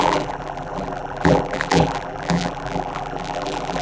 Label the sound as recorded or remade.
remade